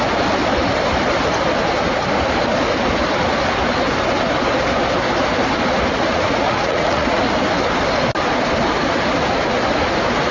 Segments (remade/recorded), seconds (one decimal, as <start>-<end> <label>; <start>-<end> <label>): 0.0-6.1 recorded; 6.1-7.2 remade; 7.2-10.3 recorded